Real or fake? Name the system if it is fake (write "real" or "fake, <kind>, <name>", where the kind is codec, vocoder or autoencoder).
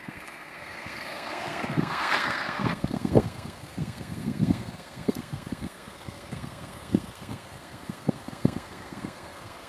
fake, codec, SNAC